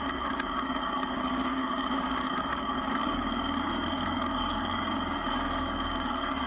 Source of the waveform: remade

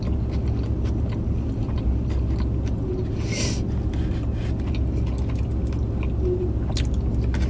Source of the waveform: recorded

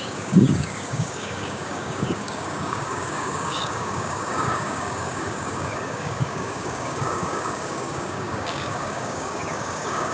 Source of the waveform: remade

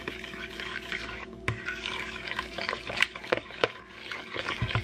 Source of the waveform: remade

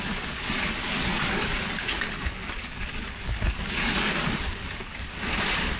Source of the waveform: remade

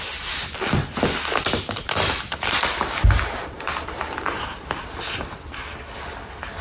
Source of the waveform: recorded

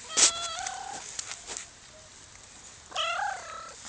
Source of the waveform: recorded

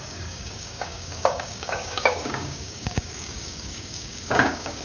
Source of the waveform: remade